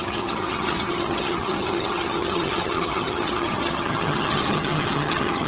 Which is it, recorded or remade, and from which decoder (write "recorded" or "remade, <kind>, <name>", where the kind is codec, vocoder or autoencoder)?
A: remade, vocoder, HiFi-GAN